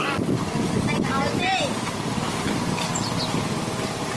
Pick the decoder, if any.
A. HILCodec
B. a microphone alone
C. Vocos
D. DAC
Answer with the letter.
B